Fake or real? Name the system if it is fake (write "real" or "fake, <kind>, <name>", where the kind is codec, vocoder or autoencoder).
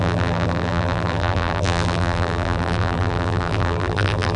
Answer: fake, vocoder, BigVGAN v2